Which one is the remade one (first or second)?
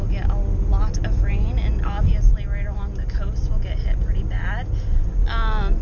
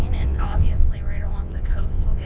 second